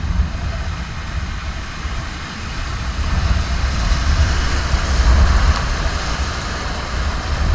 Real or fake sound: real